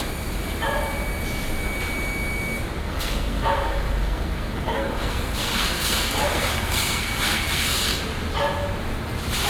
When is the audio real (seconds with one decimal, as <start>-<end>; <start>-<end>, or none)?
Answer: 0.0-2.8; 8.0-9.5